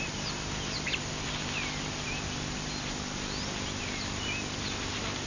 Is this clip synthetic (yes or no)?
no